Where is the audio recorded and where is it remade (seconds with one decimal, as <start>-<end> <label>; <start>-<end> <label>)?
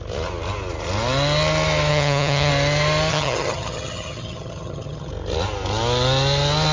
0.0-1.9 recorded; 1.9-2.5 remade; 2.5-3.1 recorded; 3.1-5.1 remade; 5.1-6.7 recorded